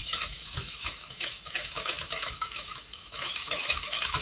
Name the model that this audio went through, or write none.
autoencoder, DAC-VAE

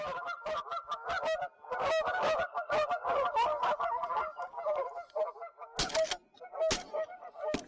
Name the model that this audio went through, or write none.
none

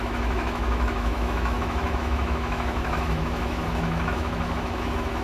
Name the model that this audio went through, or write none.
autoencoder, DAC-VAE